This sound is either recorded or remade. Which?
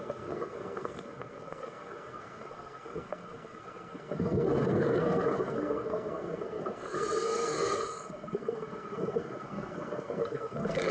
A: remade